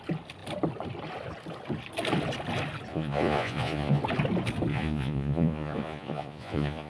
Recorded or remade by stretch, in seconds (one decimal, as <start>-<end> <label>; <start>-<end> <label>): 0.0-2.9 recorded; 2.9-4.0 remade; 4.0-4.7 recorded; 4.7-6.9 remade